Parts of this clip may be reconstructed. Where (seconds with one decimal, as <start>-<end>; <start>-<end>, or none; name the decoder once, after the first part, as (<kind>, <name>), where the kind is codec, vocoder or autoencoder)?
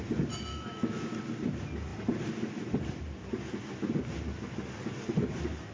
0.5-1.2 (autoencoder, DAC-VAE)